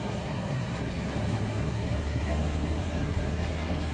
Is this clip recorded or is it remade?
remade